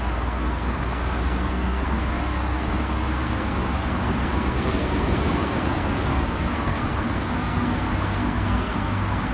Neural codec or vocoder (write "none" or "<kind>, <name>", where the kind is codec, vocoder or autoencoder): codec, SNAC